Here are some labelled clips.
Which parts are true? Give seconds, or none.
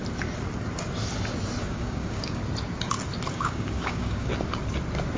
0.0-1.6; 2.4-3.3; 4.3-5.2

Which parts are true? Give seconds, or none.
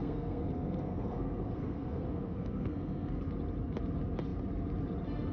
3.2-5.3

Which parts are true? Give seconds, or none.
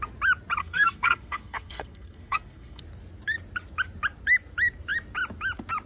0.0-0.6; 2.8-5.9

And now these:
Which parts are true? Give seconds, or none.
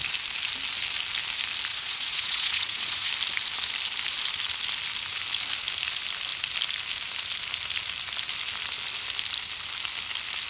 0.0-1.7; 3.1-10.5